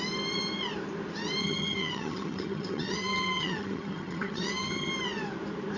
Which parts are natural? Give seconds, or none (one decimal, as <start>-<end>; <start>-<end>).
0.0-1.4; 4.9-5.8